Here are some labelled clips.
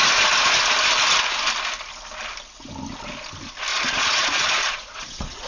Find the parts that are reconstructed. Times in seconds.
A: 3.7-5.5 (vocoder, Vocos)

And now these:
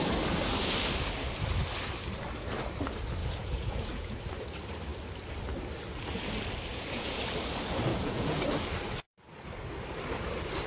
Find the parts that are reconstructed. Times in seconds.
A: 3.2-4.2 (vocoder, Vocos); 6.7-7.2; 7.9-8.4

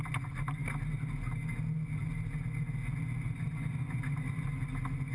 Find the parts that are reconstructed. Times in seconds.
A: none